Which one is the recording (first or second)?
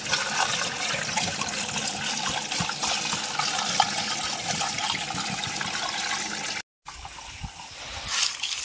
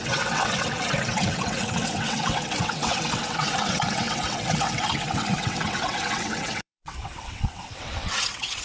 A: first